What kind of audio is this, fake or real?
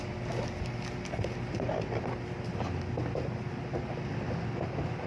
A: real